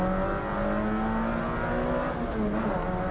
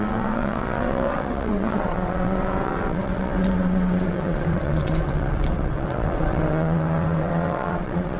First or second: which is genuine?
first